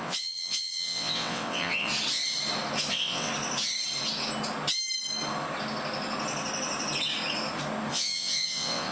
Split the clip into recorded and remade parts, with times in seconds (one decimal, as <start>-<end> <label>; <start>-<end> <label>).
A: 0.0-1.9 remade; 1.9-2.9 recorded; 2.9-3.3 remade; 3.3-7.9 recorded; 7.9-8.9 remade